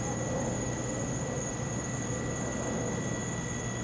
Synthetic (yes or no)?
no